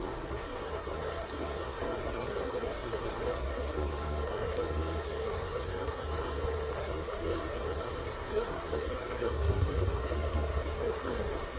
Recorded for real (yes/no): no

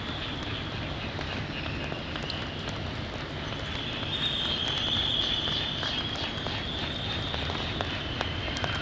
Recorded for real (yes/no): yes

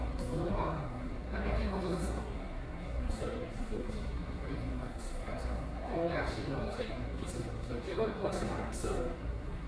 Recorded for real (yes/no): no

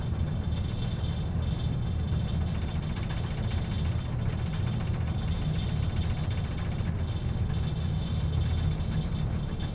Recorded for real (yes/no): yes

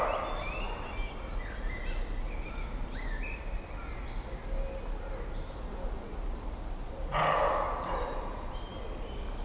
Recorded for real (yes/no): yes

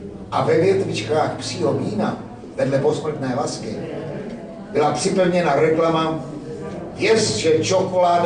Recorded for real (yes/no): yes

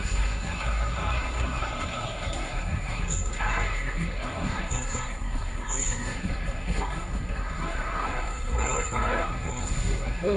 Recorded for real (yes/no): no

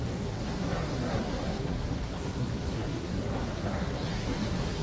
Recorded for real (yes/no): no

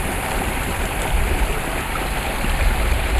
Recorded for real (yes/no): yes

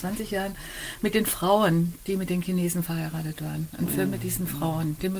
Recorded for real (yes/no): yes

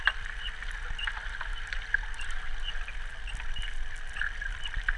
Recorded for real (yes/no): yes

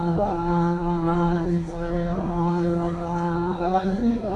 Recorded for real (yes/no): no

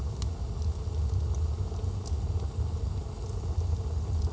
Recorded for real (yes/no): yes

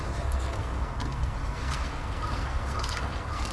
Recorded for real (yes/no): no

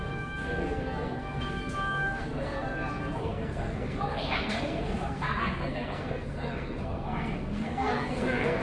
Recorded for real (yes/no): no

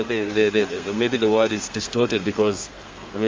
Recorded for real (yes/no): no